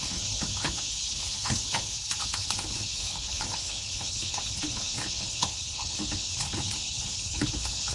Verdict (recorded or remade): remade